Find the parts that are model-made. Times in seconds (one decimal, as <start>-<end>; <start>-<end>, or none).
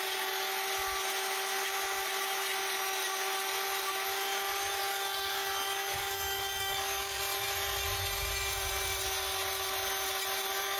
4.9-7.2